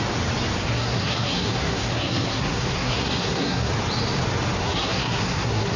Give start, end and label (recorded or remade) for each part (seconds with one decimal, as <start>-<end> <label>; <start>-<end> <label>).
0.0-0.6 recorded; 0.6-3.7 remade; 3.7-4.6 recorded; 4.6-5.8 remade